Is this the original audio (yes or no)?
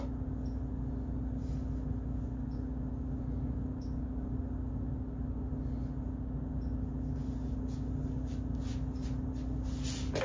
yes